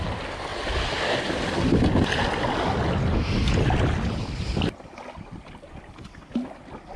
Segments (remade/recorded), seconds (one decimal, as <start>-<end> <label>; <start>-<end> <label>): 0.0-7.0 recorded